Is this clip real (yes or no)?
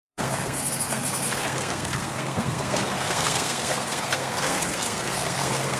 no